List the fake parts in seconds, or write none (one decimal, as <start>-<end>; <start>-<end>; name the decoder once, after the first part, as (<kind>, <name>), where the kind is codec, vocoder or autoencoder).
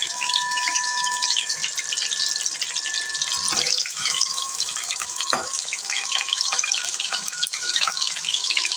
0.0-1.6 (autoencoder, DAC-VAE); 3.6-8.8